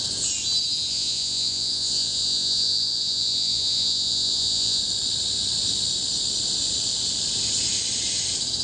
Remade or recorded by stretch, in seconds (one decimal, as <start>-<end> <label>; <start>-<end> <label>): 0.0-0.9 recorded; 0.9-4.8 remade; 4.8-8.6 recorded